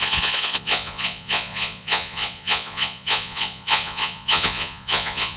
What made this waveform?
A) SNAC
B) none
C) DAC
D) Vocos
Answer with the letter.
D